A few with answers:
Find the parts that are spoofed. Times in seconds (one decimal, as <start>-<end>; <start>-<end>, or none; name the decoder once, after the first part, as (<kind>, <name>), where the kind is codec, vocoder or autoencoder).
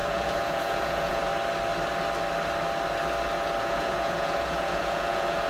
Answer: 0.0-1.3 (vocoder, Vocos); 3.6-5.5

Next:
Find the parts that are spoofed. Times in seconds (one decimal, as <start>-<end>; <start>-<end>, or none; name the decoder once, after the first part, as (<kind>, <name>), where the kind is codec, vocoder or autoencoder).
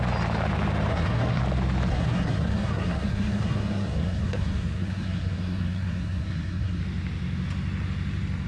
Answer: 0.9-1.4 (codec, SNAC); 1.9-6.8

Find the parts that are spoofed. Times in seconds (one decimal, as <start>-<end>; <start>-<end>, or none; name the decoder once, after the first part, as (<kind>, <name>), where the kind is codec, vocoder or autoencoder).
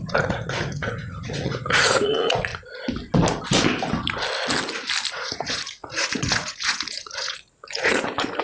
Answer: 0.0-2.5 (vocoder, Vocos); 5.1-8.4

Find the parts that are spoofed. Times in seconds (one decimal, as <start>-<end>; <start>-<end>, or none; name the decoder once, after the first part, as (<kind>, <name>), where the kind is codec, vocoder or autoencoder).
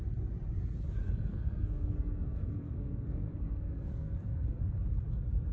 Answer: 1.3-4.6 (codec, SNAC)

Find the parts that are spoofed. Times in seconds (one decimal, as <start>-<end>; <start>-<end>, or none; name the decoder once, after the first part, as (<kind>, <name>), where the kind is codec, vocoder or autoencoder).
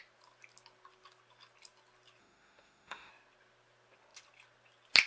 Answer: 2.2-3.1 (autoencoder, DAC-VAE)